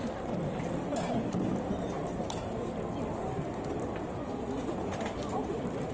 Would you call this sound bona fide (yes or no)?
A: yes